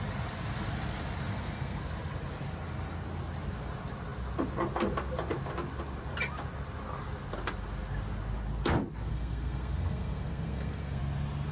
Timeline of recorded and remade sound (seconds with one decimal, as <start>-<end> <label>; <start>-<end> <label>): 0.0-1.3 recorded; 1.3-1.8 remade; 1.8-9.1 recorded; 9.1-11.0 remade; 11.0-11.5 recorded